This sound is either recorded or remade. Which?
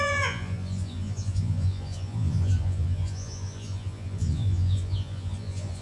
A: remade